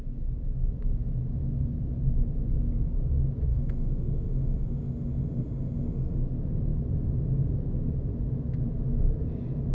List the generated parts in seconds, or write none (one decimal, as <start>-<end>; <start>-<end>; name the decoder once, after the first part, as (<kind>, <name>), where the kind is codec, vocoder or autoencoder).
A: 3.5-6.2 (autoencoder, DAC-VAE)